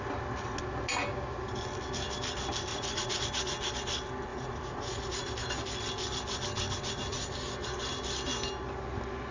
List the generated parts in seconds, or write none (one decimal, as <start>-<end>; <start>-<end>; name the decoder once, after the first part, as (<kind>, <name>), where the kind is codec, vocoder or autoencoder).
2.7-3.2 (vocoder, Vocos); 4.3-5.3